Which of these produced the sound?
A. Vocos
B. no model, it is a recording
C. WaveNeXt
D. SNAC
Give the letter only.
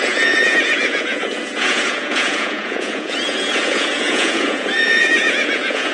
A